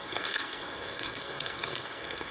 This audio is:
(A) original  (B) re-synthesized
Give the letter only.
B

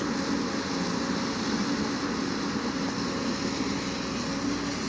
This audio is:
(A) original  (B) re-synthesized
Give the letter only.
A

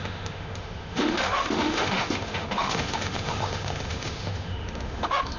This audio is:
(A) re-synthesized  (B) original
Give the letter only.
A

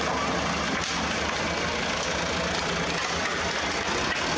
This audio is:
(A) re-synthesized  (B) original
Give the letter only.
B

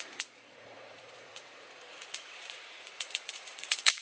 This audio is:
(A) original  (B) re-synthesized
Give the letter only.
B